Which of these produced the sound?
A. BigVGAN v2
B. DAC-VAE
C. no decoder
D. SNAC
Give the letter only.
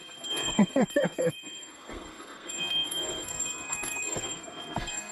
D